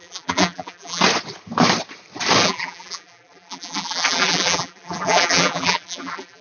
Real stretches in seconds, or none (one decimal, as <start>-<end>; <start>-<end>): 1.0-2.4

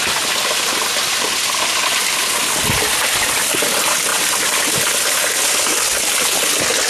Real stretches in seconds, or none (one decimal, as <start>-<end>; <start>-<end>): 0.0-4.1; 4.7-6.9

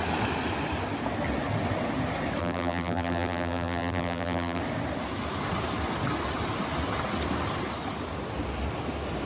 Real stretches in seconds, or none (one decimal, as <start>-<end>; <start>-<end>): 0.0-2.4; 4.6-9.3

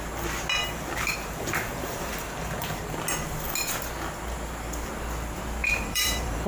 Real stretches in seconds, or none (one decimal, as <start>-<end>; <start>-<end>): 0.0-0.6; 3.0-5.6

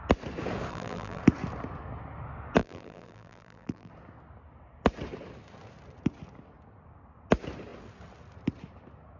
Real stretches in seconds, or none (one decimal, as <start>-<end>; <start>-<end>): 0.0-0.7; 1.2-2.6; 3.9-9.2